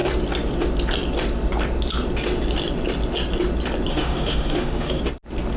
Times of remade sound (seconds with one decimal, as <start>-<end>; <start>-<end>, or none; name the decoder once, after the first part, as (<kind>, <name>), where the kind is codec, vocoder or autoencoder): 3.9-5.0 (autoencoder, DAC-VAE)